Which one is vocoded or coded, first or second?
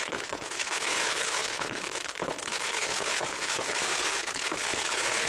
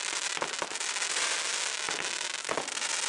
first